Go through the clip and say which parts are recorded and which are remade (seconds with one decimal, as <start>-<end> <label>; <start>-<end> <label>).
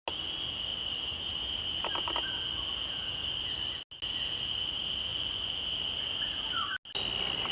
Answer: 0.0-5.1 recorded; 5.1-5.6 remade; 5.6-7.5 recorded